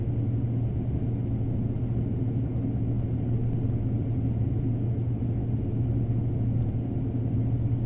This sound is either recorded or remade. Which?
recorded